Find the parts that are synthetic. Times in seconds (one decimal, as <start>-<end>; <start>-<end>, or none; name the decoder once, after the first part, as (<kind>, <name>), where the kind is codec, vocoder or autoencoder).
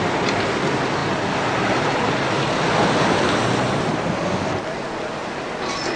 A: none